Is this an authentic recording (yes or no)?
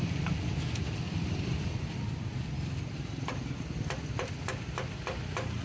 yes